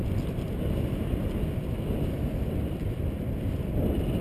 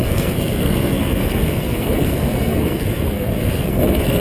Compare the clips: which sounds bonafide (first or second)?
first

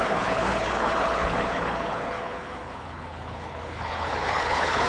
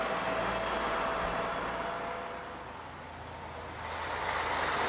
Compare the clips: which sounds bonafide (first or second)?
second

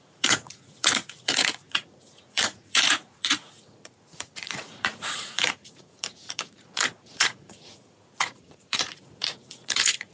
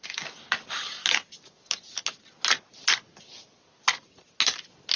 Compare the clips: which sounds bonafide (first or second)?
second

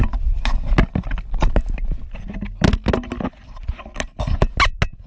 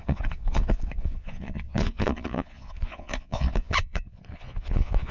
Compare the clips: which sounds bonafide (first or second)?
first